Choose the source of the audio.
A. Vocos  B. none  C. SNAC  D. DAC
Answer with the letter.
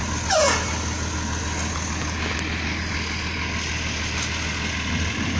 B